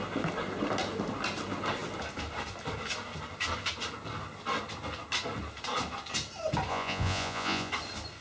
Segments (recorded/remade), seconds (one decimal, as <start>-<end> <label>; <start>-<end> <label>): 0.0-6.7 recorded; 6.7-7.7 remade; 7.7-8.2 recorded